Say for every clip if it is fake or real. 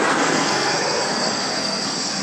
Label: fake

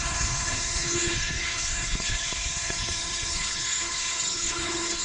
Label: fake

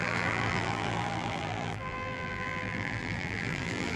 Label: fake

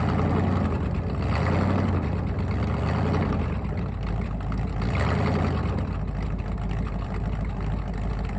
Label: real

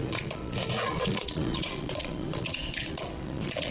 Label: fake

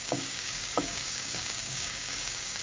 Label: fake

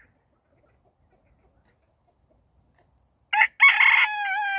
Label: real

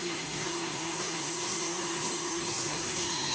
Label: fake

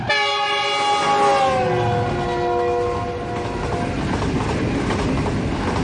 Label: real